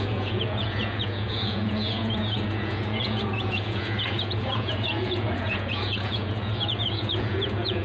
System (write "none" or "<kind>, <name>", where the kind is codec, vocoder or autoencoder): vocoder, Vocos